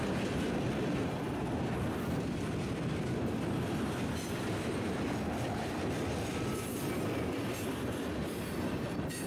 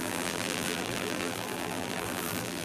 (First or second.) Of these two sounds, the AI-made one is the second